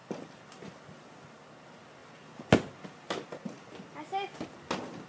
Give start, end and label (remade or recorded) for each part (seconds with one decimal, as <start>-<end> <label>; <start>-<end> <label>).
0.0-5.1 recorded